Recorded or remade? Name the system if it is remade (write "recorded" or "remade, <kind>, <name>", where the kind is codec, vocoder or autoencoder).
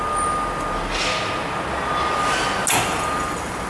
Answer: recorded